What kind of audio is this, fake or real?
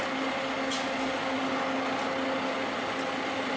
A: real